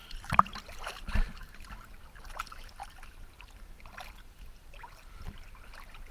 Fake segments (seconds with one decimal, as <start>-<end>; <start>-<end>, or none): 0.0-0.8